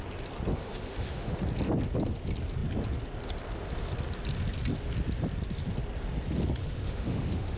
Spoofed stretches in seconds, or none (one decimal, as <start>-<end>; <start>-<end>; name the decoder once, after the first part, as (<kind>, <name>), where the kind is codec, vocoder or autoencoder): 0.5-1.4 (autoencoder, DAC-VAE); 6.6-7.6